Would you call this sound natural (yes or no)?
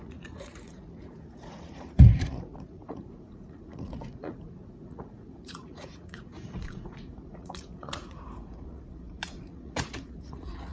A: no